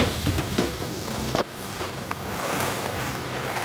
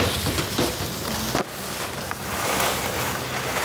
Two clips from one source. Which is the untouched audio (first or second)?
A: second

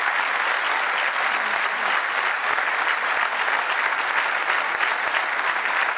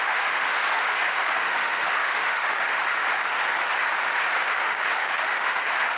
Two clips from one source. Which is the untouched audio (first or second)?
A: first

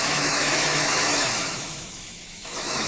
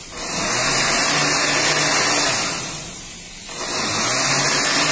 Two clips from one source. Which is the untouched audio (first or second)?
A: second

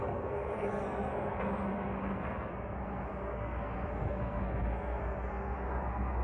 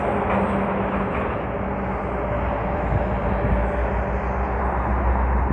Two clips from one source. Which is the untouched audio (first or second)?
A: second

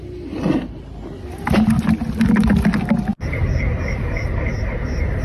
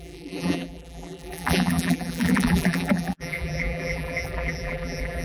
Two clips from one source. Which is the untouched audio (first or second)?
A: first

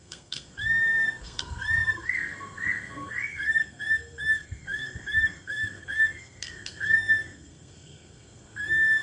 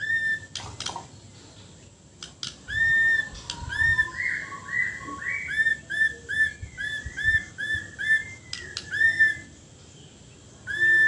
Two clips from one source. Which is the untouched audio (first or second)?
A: second